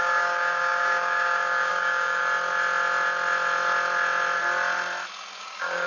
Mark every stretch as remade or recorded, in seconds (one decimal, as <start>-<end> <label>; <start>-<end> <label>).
0.0-2.2 remade; 2.2-5.4 recorded; 5.4-5.9 remade